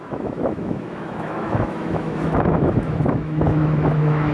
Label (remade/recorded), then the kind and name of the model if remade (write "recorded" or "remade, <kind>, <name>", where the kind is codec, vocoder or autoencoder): remade, autoencoder, DAC-VAE